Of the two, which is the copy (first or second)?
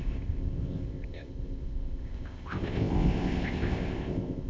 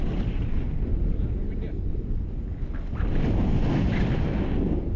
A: first